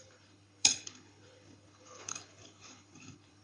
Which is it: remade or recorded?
remade